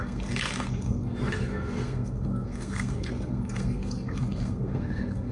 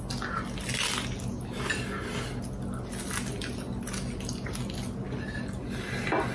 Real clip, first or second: second